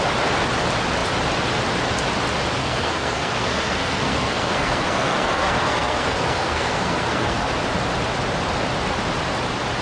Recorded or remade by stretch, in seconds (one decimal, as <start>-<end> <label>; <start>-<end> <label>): 0.0-2.6 recorded; 2.6-7.5 remade; 7.5-9.8 recorded